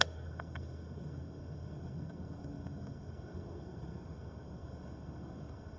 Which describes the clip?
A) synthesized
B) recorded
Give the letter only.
A